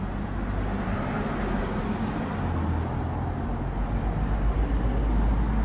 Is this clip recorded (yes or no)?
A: yes